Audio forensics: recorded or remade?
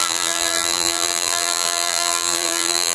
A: remade